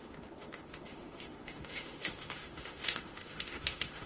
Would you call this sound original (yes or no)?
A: no